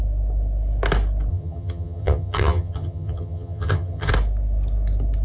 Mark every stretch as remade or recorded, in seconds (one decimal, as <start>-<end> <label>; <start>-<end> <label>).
0.0-1.3 recorded; 1.3-4.1 remade; 4.1-5.2 recorded